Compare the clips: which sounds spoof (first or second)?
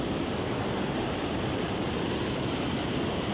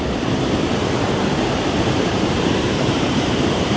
second